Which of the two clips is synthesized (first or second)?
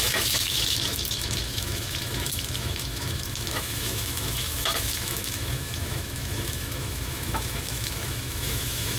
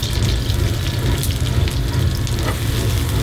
first